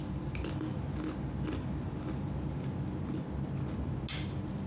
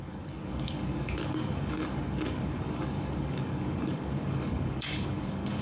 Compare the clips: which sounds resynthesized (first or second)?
second